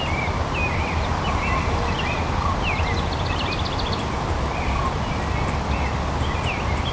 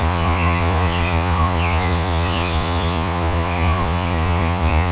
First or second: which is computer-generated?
second